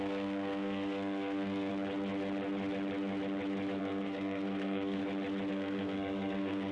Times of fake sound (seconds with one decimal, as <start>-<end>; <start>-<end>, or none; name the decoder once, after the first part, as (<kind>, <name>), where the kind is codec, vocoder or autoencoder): 0.0-1.7 (codec, SNAC); 3.8-5.0; 5.5-6.7